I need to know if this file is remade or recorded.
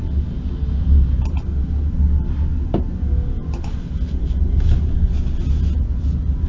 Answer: recorded